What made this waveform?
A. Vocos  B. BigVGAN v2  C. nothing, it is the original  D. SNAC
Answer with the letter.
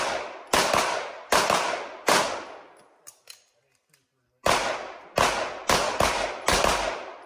C